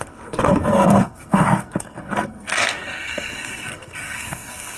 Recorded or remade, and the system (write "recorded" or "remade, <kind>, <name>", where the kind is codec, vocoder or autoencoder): remade, codec, SNAC